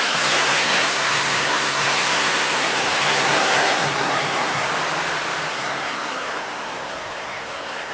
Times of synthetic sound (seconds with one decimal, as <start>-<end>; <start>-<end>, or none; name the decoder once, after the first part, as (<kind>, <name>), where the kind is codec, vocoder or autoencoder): 0.0-4.7 (codec, SNAC); 5.5-7.9